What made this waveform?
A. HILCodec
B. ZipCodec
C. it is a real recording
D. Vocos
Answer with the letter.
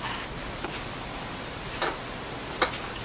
C